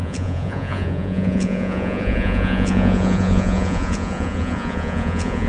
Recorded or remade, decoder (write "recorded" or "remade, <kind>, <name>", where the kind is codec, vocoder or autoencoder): remade, vocoder, Vocos